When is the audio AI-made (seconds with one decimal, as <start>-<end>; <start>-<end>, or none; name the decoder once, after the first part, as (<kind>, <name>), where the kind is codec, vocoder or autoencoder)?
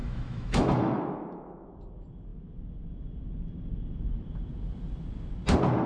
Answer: 0.0-1.7 (autoencoder, DAC-VAE)